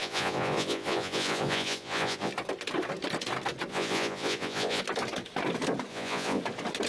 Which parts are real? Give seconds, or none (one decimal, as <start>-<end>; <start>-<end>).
2.3-3.7; 4.8-5.9; 6.4-6.9